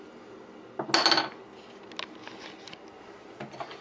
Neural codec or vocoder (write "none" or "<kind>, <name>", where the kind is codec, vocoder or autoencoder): none